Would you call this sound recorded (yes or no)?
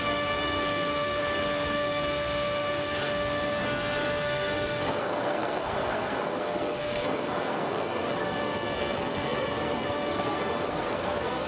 no